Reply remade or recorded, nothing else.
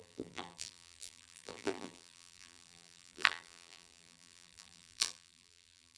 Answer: remade